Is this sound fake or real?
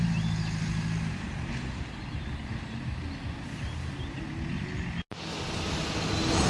real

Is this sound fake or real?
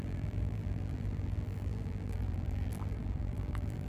fake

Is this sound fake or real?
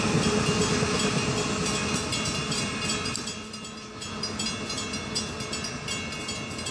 real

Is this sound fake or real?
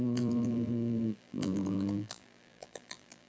fake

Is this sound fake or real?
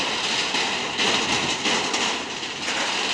real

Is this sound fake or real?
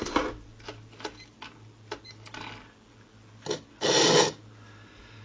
real